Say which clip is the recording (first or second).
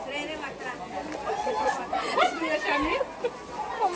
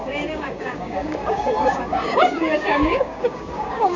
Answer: first